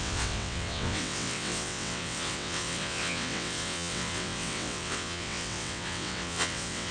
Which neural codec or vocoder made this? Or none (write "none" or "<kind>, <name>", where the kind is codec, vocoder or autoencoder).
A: vocoder, WaveNeXt